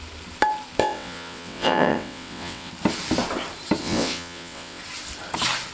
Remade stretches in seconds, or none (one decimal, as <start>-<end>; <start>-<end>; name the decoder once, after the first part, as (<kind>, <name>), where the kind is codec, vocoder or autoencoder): 0.8-2.7 (vocoder, WaveNeXt); 3.8-4.8